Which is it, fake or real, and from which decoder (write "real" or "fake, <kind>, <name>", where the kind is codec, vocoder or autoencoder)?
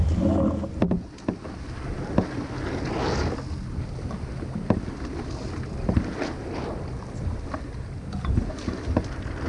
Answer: real